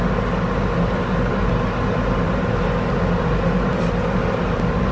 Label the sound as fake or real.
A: real